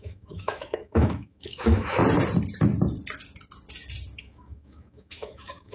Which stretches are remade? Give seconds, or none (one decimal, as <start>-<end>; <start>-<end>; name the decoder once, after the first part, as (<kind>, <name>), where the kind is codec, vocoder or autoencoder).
0.0-2.0 (autoencoder, DAC-VAE); 4.2-5.7